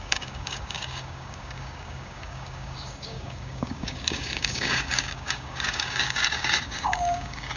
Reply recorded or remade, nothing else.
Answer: remade